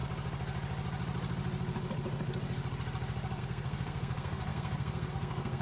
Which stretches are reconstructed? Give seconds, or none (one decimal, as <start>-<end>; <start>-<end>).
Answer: 3.4-5.6